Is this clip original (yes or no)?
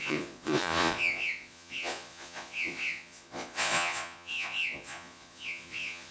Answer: no